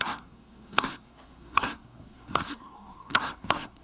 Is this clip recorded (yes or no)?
no